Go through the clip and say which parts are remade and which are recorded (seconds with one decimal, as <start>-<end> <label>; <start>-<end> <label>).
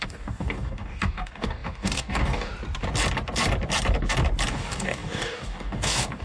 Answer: 0.0-2.5 remade; 2.5-4.5 recorded; 4.5-6.2 remade